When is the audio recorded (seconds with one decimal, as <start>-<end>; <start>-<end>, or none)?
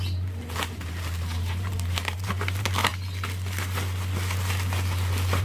2.9-5.4